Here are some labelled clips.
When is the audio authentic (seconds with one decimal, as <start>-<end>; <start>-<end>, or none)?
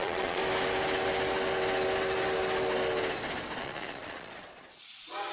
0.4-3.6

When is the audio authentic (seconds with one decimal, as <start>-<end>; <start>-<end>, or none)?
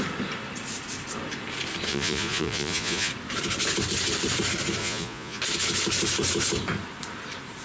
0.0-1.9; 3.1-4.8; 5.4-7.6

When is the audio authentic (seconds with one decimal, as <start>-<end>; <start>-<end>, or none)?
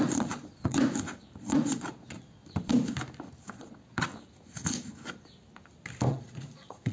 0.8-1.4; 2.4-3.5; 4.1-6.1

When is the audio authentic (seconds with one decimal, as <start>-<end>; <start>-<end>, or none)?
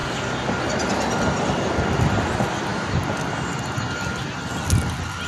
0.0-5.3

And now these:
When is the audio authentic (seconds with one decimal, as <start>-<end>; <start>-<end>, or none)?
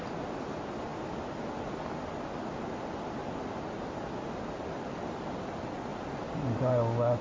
0.0-7.2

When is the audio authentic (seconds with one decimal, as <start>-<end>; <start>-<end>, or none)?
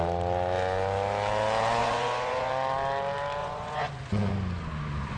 0.0-1.8; 2.5-3.4; 4.3-5.2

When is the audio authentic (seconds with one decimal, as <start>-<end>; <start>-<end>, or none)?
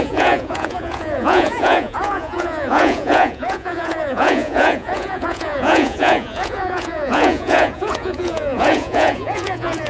none